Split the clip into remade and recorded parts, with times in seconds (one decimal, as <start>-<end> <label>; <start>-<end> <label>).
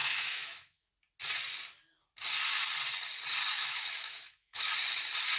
0.0-0.9 remade; 0.9-3.5 recorded; 3.5-4.7 remade; 4.7-5.4 recorded